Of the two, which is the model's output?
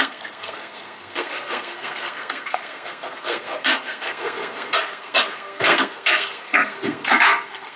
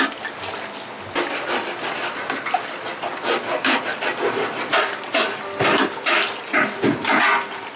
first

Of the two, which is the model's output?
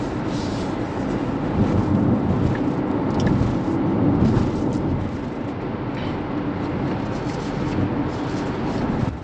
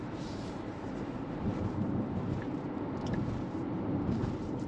second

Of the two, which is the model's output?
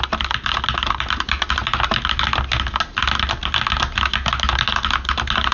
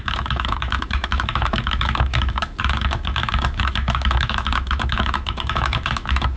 second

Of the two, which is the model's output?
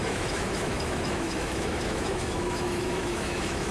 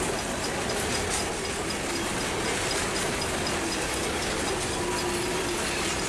first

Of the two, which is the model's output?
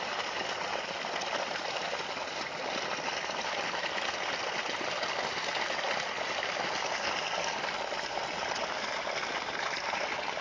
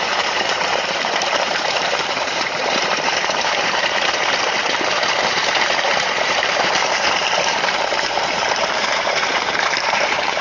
second